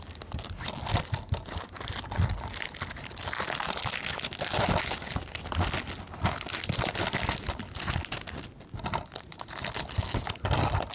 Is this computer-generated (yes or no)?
no